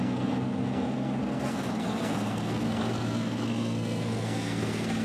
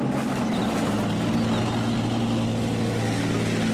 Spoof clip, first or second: first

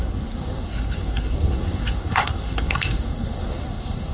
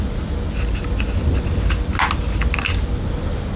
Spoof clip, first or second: first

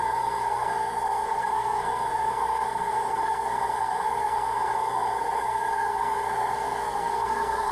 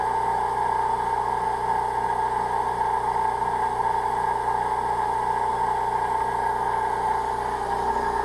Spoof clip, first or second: first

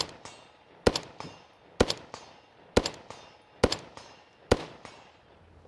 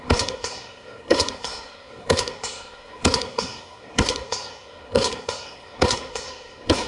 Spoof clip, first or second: second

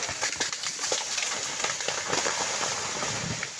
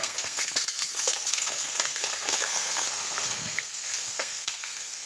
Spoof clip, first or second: second